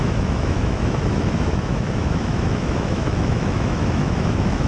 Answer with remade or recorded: remade